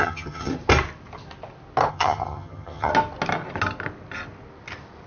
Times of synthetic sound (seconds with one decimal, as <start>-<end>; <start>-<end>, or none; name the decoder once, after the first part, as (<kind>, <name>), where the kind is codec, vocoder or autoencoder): 0.0-0.5 (vocoder, HiFi-GAN); 1.9-2.9